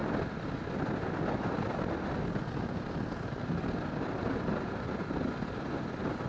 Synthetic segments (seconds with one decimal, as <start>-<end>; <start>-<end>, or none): none